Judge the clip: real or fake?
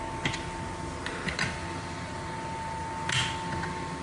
real